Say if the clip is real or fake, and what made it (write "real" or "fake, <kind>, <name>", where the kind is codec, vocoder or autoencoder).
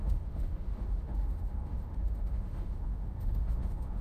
fake, autoencoder, DAC-VAE